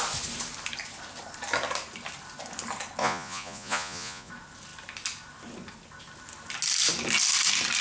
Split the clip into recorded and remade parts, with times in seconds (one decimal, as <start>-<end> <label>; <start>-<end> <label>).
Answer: 0.0-3.0 recorded; 3.0-4.3 remade; 4.3-7.8 recorded